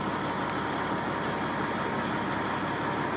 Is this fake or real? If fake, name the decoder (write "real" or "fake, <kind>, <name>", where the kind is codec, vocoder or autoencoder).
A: real